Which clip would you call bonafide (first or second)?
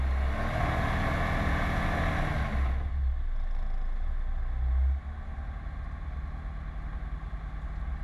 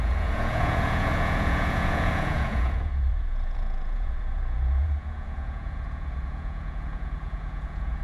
first